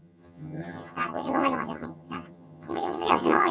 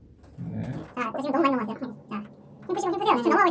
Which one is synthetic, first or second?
first